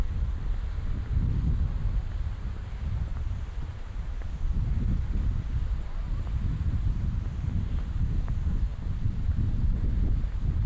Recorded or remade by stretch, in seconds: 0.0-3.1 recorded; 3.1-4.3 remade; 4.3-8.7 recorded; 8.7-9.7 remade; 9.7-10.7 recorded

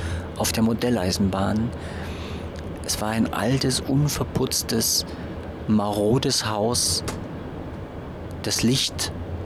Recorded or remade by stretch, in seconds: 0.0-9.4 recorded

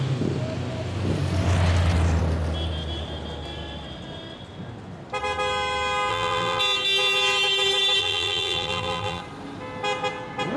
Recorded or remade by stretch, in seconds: 0.0-6.1 recorded; 6.1-6.6 remade; 6.6-8.0 recorded; 8.0-9.2 remade; 9.2-10.6 recorded